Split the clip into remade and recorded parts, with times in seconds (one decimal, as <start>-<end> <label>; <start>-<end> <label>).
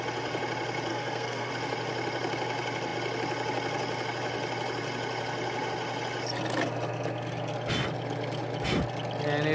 0.0-0.9 recorded; 0.9-1.5 remade; 1.5-9.5 recorded